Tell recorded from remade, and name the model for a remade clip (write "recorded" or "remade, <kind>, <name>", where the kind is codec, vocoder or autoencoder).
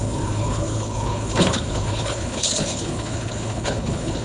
remade, codec, HILCodec